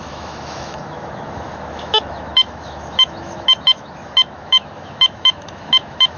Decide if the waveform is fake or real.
fake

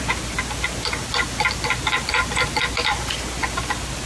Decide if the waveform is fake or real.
real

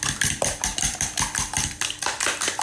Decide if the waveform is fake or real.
fake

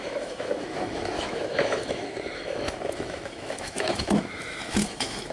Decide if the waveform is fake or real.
fake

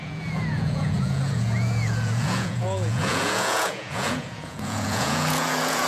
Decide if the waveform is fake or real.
fake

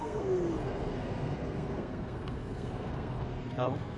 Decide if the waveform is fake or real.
fake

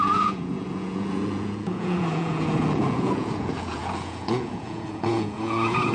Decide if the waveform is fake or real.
fake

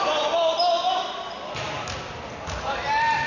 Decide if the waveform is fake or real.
real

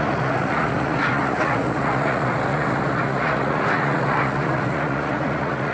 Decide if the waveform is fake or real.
fake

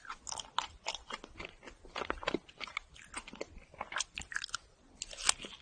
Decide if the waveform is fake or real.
real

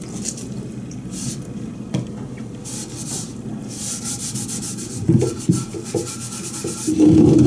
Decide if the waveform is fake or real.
real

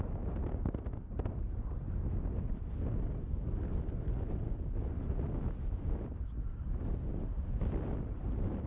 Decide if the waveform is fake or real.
real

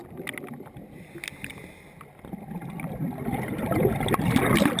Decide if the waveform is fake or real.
real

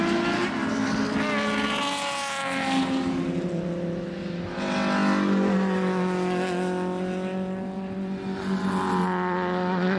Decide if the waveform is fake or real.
real